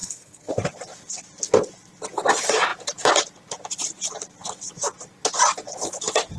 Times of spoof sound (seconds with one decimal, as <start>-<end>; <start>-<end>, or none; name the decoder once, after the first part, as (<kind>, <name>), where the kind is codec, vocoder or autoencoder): 0.0-0.5 (codec, SNAC)